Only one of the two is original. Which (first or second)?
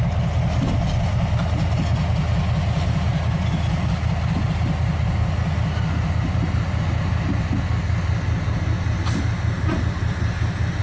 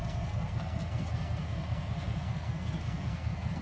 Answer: first